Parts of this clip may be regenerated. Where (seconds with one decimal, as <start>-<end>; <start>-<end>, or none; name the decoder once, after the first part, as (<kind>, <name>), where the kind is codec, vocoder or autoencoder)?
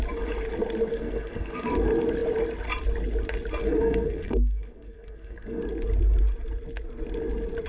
0.9-1.7 (codec, SNAC); 3.6-5.6